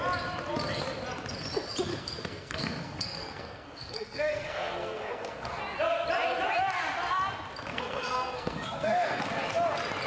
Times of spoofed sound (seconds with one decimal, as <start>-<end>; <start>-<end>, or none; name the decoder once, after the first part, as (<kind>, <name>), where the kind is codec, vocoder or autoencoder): 1.9-5.6 (codec, SNAC); 7.7-9.2